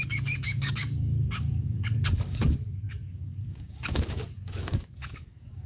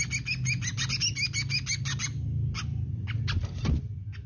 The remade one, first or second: first